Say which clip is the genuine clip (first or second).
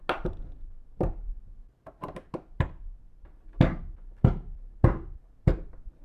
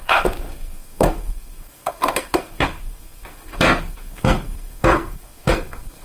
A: first